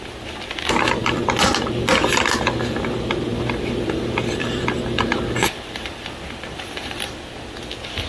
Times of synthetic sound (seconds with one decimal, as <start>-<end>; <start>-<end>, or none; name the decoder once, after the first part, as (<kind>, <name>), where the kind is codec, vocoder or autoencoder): 3.3-7.2 (vocoder, BigVGAN v2)